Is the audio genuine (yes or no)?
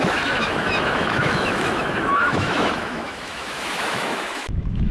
no